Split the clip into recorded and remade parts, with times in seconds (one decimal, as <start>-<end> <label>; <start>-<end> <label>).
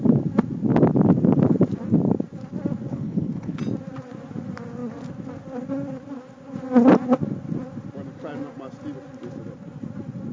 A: 0.0-2.9 recorded; 2.9-3.6 remade; 3.6-10.3 recorded